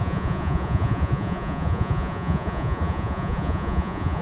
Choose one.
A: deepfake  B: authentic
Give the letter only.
A